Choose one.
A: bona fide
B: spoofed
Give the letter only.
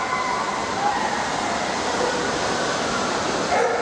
A